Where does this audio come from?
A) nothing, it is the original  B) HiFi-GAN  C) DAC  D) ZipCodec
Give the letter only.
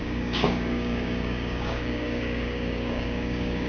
C